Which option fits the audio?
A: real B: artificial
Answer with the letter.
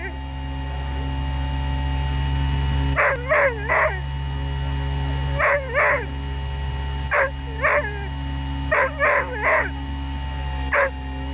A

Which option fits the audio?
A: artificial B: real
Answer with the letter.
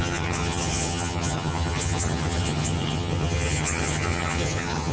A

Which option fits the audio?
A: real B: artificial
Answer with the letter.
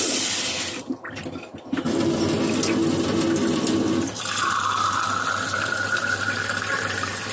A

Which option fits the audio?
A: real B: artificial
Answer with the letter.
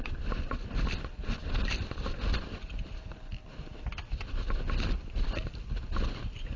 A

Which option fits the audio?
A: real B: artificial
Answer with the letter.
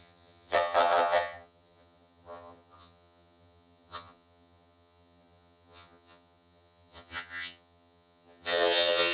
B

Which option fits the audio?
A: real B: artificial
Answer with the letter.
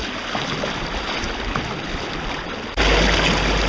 A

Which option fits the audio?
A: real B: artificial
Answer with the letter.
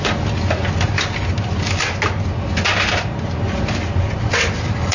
A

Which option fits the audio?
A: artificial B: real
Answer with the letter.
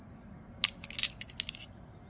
B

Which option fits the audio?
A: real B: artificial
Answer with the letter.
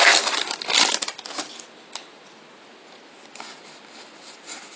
A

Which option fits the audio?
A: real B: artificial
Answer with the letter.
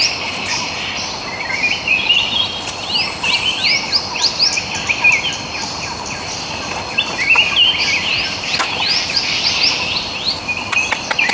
A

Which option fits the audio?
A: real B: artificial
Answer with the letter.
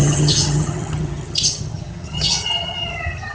B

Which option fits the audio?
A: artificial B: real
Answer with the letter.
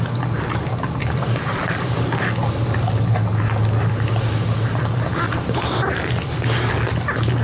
B